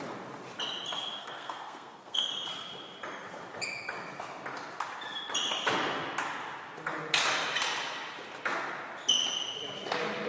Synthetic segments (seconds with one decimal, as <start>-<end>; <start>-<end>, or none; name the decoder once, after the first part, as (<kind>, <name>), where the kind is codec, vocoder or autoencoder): 1.2-2.3 (codec, SNAC)